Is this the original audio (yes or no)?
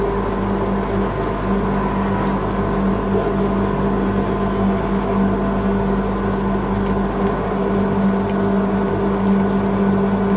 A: yes